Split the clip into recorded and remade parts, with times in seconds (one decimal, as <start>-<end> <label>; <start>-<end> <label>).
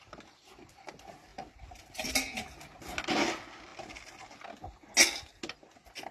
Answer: 0.0-6.1 recorded